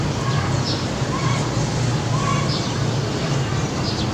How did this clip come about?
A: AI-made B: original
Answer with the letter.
B